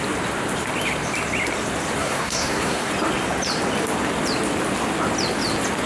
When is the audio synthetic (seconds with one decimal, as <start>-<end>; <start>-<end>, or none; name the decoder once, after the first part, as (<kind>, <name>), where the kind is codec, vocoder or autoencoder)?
2.0-2.9 (codec, SNAC)